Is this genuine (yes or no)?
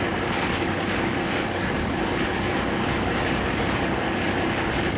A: no